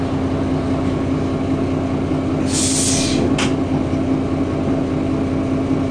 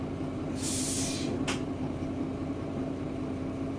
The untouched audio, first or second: first